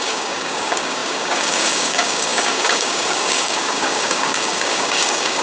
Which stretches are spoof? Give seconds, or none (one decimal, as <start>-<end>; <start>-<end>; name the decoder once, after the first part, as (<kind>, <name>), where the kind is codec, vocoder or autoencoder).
0.0-5.4 (codec, DAC)